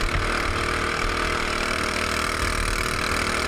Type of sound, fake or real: real